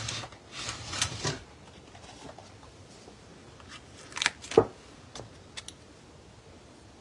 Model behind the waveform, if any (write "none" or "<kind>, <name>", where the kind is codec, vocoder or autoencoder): none